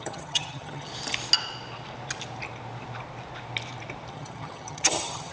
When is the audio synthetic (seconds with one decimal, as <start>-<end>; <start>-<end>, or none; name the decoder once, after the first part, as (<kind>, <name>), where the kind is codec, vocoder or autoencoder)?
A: 0.0-0.9 (vocoder, HiFi-GAN); 4.1-5.3